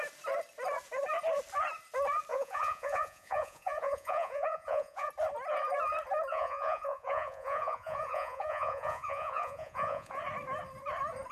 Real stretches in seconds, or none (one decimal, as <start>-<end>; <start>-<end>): 0.0-2.3; 5.1-6.3; 10.2-11.3

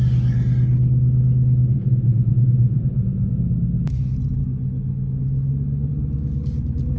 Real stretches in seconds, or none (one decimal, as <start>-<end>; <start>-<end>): 0.0-1.7; 3.3-7.0

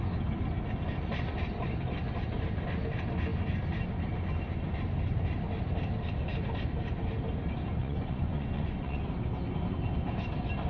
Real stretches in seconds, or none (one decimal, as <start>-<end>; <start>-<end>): 0.0-7.8; 9.0-10.7